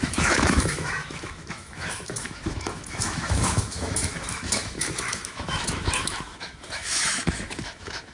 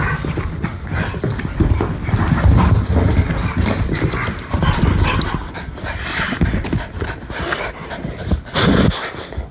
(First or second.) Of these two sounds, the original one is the second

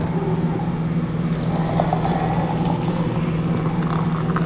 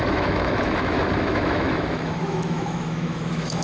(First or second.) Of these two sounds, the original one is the first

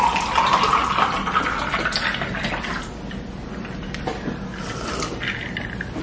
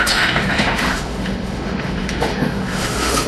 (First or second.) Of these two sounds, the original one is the first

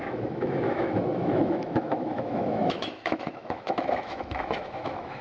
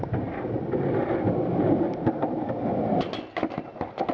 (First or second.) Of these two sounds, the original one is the second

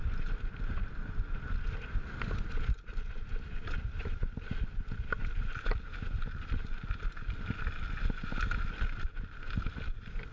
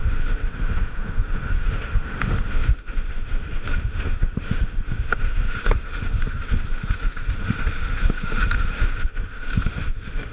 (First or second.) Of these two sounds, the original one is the first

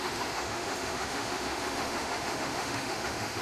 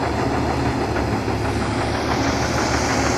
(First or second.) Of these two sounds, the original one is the second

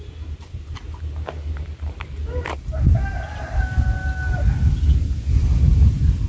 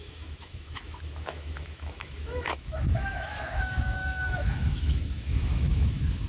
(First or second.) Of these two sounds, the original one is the first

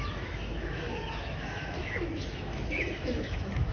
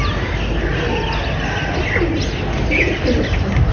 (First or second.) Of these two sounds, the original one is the second